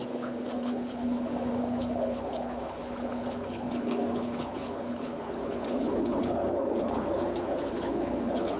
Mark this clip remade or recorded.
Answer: remade